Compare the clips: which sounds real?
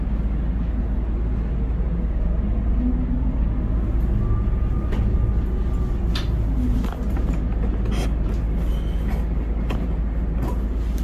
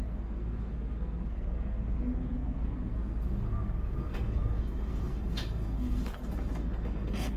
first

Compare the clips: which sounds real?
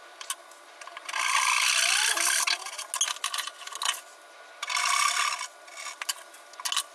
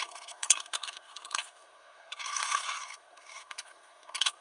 first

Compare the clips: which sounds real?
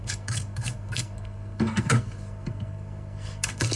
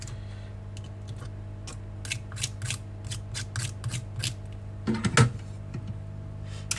second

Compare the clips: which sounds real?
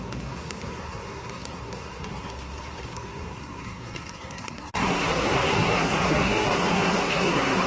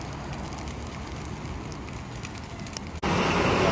second